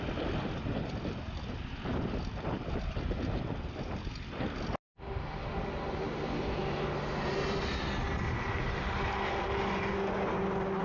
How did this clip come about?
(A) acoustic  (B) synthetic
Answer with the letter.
A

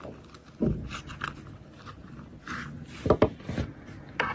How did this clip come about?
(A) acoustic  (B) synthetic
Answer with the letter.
A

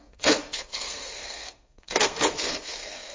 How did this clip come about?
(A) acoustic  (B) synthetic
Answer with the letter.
B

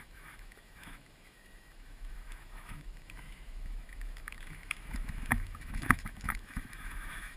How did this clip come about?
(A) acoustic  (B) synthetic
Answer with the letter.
B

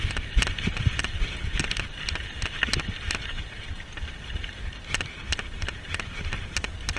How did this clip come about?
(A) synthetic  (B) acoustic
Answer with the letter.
B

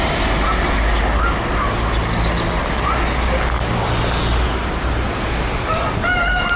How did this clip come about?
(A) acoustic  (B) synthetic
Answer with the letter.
A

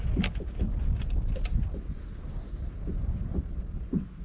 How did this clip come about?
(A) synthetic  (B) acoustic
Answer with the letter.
B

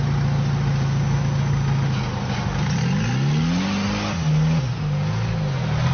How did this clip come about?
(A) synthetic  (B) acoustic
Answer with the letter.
B